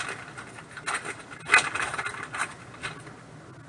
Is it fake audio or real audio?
real